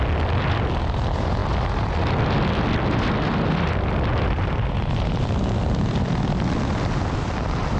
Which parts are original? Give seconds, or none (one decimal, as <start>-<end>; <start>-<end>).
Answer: 0.0-7.8